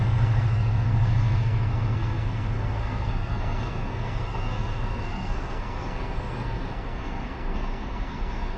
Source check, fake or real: fake